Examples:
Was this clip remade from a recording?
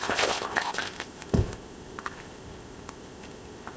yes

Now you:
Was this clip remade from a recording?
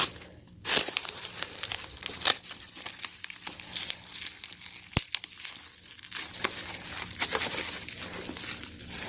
no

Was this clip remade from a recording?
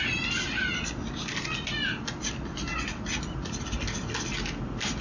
no